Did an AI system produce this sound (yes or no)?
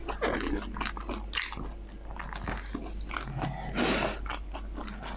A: no